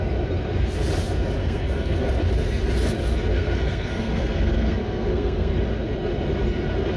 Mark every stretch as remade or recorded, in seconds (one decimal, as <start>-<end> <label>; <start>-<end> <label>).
0.0-1.4 recorded; 1.4-2.1 remade; 2.1-3.3 recorded; 3.3-5.5 remade; 5.5-7.0 recorded